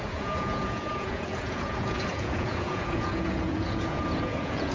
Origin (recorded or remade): remade